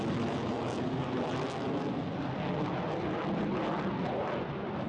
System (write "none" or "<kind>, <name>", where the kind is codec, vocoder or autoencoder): none